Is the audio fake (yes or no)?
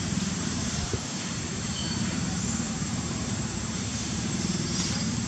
yes